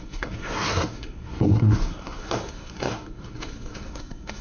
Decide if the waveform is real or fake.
fake